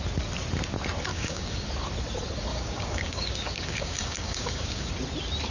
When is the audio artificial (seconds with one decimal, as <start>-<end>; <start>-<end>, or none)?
1.1-1.7; 2.5-4.9